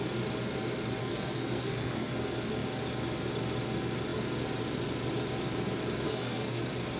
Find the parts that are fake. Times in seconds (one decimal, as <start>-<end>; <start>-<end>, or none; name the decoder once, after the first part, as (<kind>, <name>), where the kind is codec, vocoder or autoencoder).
1.0-2.1 (codec, SNAC); 6.1-6.6